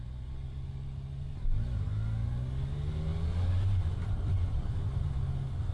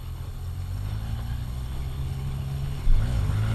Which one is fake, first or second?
second